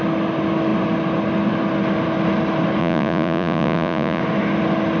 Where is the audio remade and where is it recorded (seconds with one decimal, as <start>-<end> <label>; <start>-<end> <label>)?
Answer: 0.0-2.8 recorded; 2.8-4.2 remade; 4.2-5.0 recorded